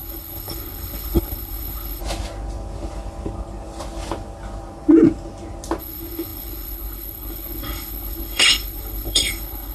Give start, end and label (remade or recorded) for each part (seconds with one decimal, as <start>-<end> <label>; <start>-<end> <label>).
0.0-2.0 remade; 2.0-5.8 recorded; 5.8-9.7 remade